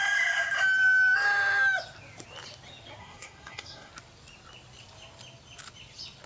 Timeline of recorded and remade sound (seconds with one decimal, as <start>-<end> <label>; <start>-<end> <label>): 0.0-3.0 recorded; 3.0-3.9 remade; 3.9-6.3 recorded

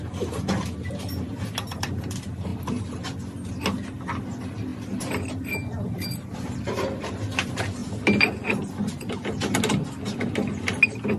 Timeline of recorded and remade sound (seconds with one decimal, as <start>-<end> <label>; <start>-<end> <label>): 0.0-11.2 recorded

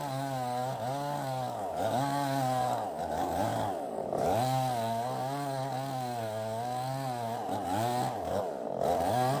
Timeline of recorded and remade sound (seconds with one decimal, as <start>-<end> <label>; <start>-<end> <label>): 0.0-9.4 remade

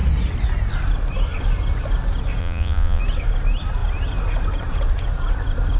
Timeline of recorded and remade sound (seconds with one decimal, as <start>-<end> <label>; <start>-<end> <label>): 0.0-2.4 recorded; 2.4-3.0 remade; 3.0-5.8 recorded

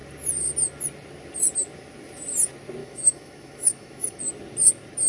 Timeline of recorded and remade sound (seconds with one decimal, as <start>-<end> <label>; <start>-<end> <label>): 0.0-2.8 recorded; 2.8-4.2 remade; 4.2-5.1 recorded

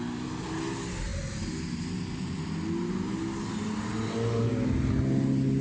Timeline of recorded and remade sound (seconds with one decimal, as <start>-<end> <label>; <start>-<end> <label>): 0.0-5.6 recorded

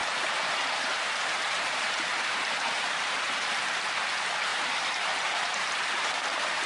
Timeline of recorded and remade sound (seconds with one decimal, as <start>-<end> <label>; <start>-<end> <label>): 0.0-3.8 remade; 3.8-4.5 recorded; 4.5-6.1 remade; 6.1-6.7 recorded